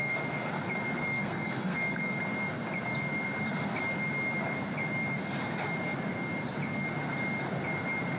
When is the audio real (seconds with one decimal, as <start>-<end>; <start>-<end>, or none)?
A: 0.5-1.0; 2.2-8.2